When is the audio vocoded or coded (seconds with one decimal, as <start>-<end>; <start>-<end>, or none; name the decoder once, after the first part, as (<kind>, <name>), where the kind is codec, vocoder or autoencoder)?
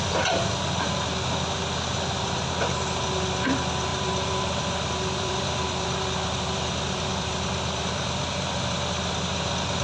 3.9-8.5 (vocoder, BigVGAN v2)